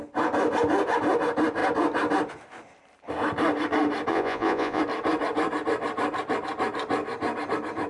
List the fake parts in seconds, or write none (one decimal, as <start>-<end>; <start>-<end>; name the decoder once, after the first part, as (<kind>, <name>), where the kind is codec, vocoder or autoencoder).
4.1-4.8 (vocoder, Vocos)